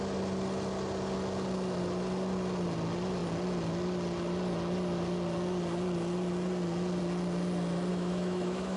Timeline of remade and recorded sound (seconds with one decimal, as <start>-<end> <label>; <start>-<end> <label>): 0.0-7.9 recorded; 7.9-8.8 remade